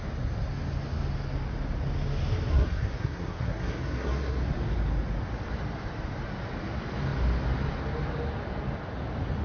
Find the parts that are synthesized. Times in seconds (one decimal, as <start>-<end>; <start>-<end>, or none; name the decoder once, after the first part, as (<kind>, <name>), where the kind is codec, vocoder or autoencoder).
2.5-4.4 (codec, SNAC)